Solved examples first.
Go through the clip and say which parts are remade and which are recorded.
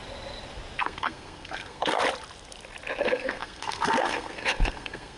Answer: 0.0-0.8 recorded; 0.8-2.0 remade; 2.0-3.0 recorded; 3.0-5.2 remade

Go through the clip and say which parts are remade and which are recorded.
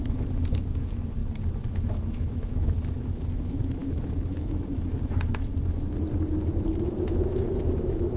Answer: 0.0-1.2 remade; 1.2-1.7 recorded; 1.7-5.5 remade; 5.5-6.9 recorded; 6.9-8.2 remade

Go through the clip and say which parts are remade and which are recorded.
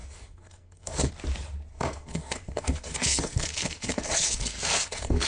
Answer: 0.0-1.1 remade; 1.1-1.7 recorded; 1.7-5.3 remade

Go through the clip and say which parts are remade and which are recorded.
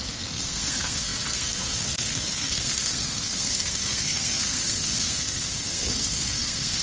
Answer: 0.0-6.8 remade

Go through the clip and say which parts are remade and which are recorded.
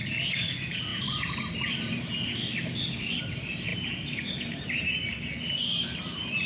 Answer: 0.0-3.7 recorded; 3.7-4.9 remade; 4.9-6.5 recorded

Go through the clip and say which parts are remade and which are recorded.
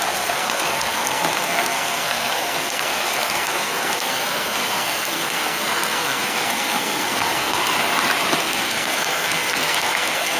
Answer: 0.0-7.6 remade; 7.6-8.4 recorded; 8.4-10.4 remade